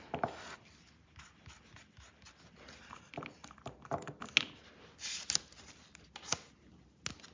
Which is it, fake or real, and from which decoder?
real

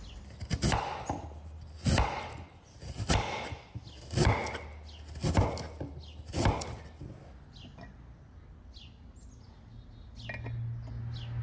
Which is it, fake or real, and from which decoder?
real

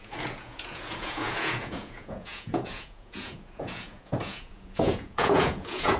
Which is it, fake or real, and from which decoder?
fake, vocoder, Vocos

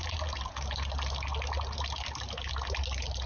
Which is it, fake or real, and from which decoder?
real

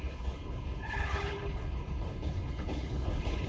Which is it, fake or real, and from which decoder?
fake, codec, HILCodec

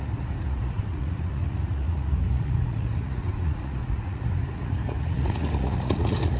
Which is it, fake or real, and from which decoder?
fake, vocoder, Vocos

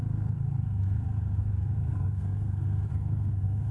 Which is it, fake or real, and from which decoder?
fake, codec, SNAC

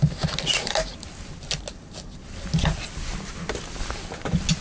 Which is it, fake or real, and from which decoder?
real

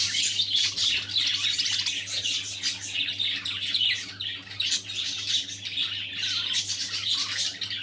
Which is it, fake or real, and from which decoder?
real